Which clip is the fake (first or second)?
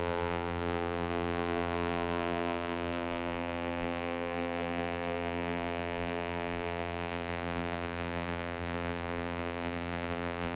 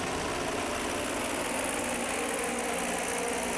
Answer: first